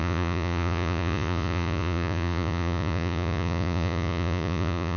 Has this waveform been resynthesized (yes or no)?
yes